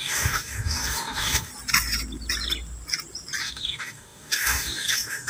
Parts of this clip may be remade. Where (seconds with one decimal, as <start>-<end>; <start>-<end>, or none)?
0.0-1.5; 3.4-5.3